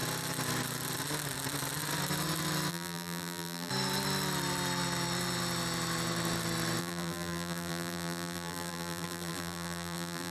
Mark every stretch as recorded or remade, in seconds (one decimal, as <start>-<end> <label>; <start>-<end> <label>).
0.0-2.7 recorded; 2.7-3.7 remade; 3.7-6.8 recorded; 6.8-10.3 remade